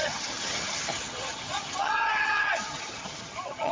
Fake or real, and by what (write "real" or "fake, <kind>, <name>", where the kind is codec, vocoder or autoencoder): fake, vocoder, HiFi-GAN